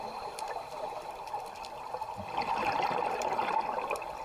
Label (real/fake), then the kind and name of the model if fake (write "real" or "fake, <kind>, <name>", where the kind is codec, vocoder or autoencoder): real